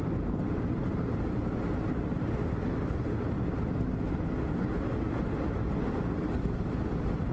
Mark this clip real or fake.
real